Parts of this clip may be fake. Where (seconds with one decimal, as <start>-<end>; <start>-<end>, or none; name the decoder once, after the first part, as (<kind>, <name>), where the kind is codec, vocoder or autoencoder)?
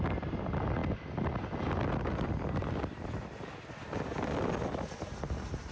none